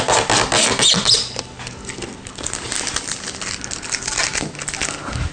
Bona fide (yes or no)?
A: yes